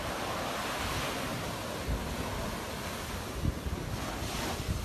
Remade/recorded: recorded